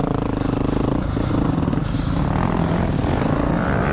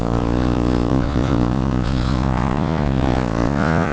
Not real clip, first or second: second